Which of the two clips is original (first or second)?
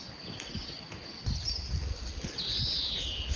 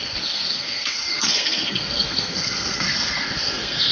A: first